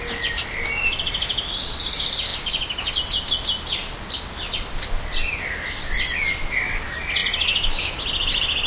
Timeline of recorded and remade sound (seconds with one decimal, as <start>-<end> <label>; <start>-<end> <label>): 0.0-8.7 recorded